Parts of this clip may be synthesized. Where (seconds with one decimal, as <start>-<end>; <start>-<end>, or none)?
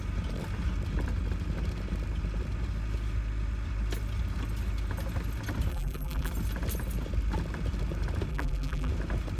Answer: 5.7-6.3; 8.3-8.9